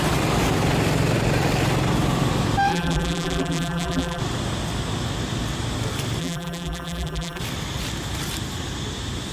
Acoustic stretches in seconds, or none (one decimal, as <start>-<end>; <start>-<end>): 0.0-2.7; 4.2-6.2; 7.4-9.3